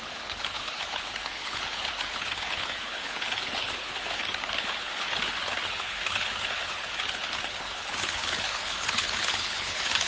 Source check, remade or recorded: remade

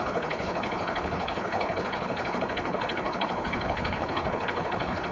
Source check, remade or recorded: remade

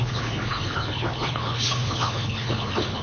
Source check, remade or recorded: remade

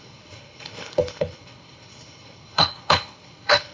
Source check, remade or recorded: remade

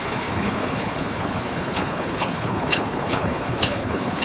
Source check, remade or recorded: remade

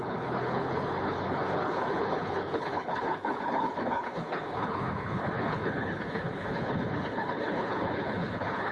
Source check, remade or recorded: remade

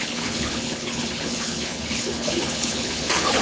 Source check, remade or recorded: remade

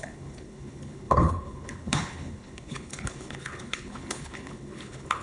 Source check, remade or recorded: remade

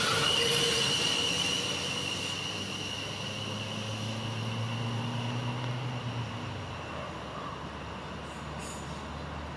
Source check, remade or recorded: recorded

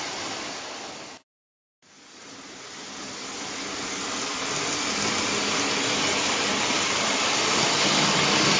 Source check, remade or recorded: recorded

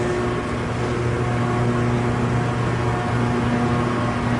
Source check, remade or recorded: recorded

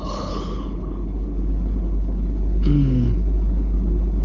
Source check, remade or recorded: remade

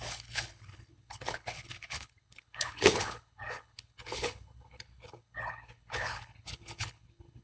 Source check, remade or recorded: remade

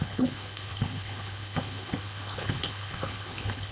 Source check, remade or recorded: remade